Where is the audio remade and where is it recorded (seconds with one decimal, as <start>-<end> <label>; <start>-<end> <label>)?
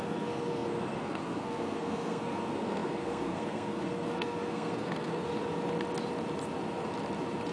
0.0-5.3 remade; 5.3-7.5 recorded